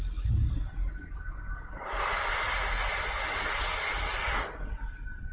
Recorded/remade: recorded